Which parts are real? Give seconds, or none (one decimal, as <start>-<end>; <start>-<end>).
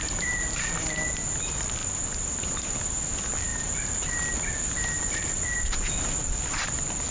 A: 0.0-7.1